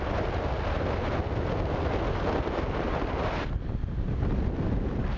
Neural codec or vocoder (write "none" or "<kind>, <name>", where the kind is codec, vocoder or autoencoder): none